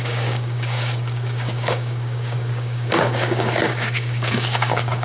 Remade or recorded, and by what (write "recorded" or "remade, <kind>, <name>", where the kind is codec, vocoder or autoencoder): remade, codec, DAC